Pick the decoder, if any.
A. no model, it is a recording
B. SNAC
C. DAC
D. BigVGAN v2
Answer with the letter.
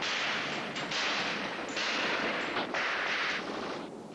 A